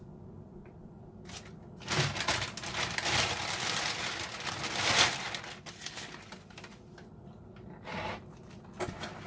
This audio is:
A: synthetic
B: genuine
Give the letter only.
B